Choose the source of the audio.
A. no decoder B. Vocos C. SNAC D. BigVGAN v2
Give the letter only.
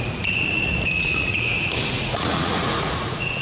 B